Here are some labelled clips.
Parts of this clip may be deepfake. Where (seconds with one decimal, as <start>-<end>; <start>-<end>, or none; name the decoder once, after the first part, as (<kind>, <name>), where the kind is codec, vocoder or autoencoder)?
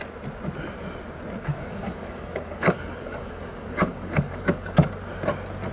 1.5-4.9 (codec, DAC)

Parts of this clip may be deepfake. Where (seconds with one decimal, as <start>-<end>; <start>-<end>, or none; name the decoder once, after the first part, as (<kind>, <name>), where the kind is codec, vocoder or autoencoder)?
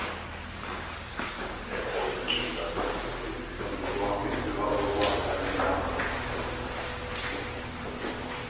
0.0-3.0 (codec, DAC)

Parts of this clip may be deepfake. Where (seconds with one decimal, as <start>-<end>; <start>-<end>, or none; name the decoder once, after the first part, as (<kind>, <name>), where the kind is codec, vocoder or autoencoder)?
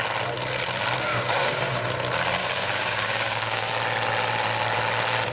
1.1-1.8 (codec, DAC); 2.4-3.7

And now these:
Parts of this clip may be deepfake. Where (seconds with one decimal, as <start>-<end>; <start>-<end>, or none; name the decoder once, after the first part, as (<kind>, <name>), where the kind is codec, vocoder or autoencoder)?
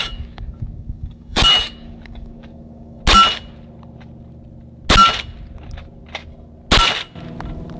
0.0-3.0 (codec, DAC)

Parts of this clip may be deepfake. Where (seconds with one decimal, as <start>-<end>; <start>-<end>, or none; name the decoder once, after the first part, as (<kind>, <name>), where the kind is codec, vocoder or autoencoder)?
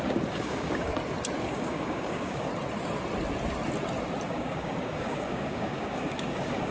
0.0-0.9 (codec, DAC); 1.4-2.5; 4.3-6.7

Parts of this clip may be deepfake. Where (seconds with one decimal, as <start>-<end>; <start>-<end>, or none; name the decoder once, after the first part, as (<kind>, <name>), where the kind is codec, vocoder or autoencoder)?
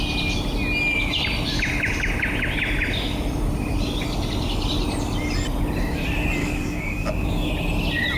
6.4-7.5 (codec, DAC)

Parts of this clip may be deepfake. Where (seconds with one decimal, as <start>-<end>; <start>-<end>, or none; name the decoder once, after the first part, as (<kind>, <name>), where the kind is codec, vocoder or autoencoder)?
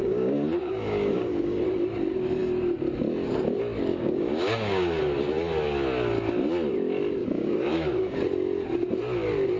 0.0-1.6 (codec, DAC); 3.9-5.0; 7.2-8.2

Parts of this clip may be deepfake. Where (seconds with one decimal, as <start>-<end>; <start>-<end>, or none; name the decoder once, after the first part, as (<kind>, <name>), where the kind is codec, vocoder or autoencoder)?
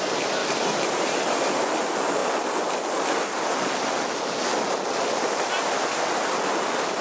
none